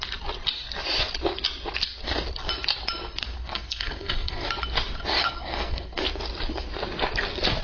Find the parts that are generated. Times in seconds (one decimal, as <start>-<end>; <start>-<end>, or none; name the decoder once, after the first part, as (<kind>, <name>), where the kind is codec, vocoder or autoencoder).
3.4-4.5 (codec, SNAC); 5.2-6.0

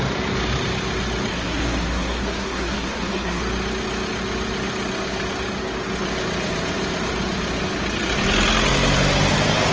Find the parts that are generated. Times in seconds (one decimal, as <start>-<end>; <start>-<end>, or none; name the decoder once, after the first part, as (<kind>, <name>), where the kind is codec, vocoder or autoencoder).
1.3-3.4 (codec, SNAC)

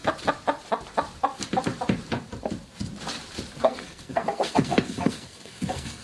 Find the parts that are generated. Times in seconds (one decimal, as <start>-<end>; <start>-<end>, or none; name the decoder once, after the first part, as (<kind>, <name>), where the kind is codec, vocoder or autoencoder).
3.6-6.0 (codec, SNAC)

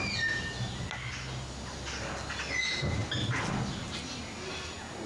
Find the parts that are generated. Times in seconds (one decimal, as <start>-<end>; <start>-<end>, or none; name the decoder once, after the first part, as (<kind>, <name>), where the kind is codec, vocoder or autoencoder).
none

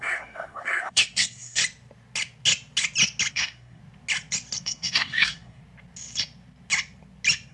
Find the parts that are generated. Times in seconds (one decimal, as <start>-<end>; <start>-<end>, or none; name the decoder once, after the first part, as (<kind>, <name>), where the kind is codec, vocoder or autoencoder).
0.0-1.6 (codec, SNAC); 3.3-3.8; 4.6-5.6